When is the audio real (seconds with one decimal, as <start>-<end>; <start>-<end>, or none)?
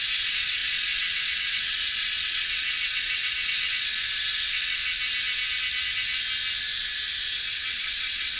4.8-7.5